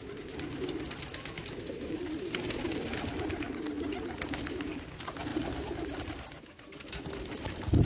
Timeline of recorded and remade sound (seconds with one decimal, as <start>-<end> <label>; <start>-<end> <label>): 0.0-1.1 recorded; 1.1-2.0 remade; 2.0-7.9 recorded

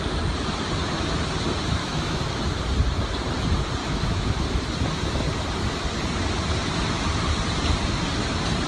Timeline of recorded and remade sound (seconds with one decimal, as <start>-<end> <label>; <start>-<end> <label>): 0.0-1.8 recorded; 1.8-2.4 remade; 2.4-3.8 recorded; 3.8-4.6 remade; 4.6-8.7 recorded

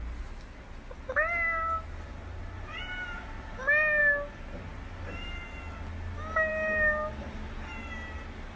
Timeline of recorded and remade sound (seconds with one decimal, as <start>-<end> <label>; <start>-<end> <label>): 0.0-8.6 recorded

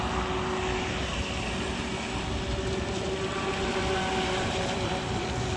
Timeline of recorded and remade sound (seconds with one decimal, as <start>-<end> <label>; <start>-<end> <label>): 0.0-5.6 recorded

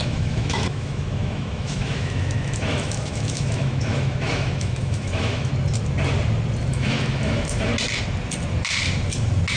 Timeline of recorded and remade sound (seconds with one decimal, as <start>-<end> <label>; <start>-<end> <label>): 0.0-5.5 remade; 5.5-6.7 recorded; 6.7-7.7 remade; 7.7-9.6 recorded

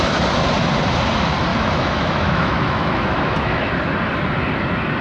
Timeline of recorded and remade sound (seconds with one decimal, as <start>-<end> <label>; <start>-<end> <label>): 0.0-1.5 recorded; 1.5-3.7 remade; 3.7-5.0 recorded

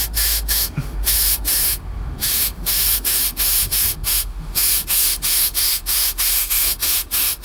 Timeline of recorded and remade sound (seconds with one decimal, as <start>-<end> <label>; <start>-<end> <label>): 0.0-7.4 remade

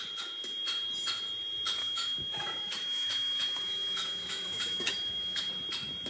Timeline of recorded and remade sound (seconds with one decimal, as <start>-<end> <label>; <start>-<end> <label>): 0.0-1.8 recorded; 1.8-5.5 remade; 5.5-6.1 recorded